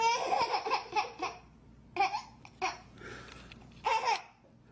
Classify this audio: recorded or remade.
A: recorded